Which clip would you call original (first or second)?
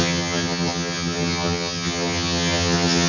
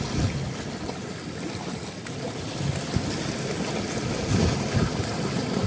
second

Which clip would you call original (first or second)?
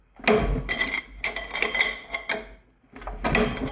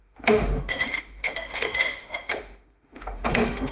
first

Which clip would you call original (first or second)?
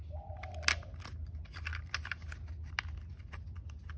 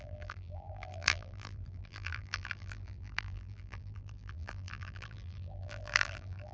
first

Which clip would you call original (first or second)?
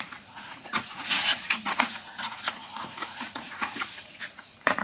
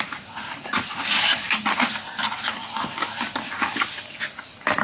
second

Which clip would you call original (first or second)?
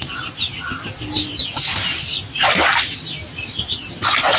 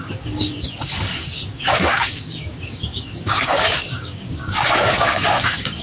first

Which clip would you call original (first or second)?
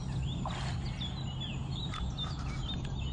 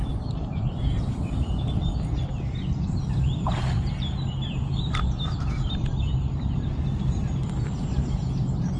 first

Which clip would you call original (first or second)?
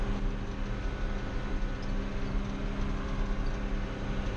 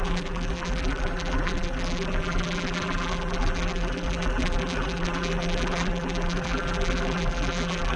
first